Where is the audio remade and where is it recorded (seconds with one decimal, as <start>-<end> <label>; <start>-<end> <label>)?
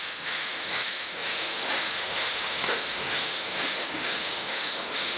0.0-5.2 remade